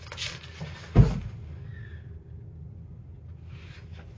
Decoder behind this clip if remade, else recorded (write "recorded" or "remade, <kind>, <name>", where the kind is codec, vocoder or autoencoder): recorded